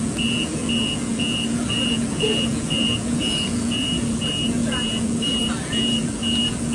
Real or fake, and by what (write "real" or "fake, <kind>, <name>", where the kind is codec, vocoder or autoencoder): fake, vocoder, Vocos